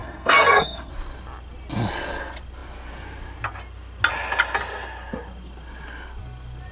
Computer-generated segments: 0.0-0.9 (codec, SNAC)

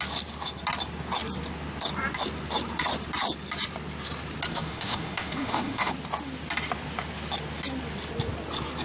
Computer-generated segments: 4.5-5.9 (autoencoder, DAC-VAE)

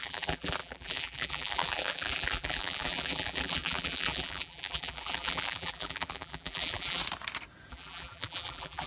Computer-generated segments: 0.0-7.0 (vocoder, BigVGAN v2); 7.7-8.9

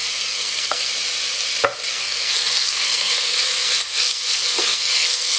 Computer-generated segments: 0.0-0.9 (codec, SNAC); 1.9-5.4

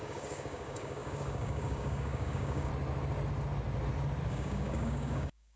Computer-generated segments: 0.0-2.7 (codec, DAC); 4.3-5.6